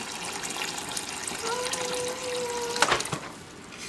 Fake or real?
real